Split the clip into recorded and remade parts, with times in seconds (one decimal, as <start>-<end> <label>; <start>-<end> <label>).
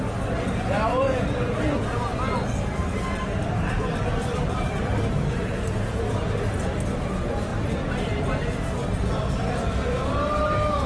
0.0-2.1 recorded; 2.1-6.9 remade; 6.9-10.9 recorded